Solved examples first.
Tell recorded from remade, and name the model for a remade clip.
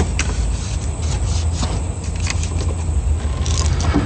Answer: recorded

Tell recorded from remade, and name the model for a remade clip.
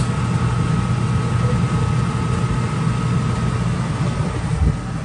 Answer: recorded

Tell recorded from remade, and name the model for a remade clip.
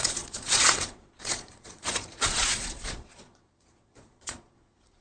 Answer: remade, vocoder, Vocos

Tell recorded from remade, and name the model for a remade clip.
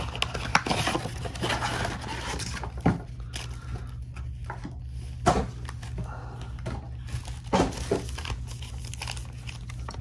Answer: recorded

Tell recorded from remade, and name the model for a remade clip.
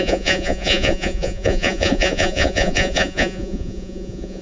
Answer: remade, vocoder, Vocos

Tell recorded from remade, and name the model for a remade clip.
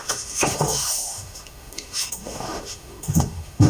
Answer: remade, autoencoder, DAC-VAE